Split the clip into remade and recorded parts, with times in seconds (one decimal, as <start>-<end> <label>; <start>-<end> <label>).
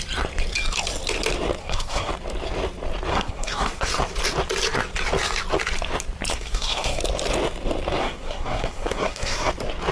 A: 0.0-1.6 recorded; 1.6-2.1 remade; 2.1-3.1 recorded; 3.1-3.9 remade; 3.9-6.3 recorded; 6.3-7.0 remade; 7.0-8.0 recorded; 8.0-9.5 remade; 9.5-9.9 recorded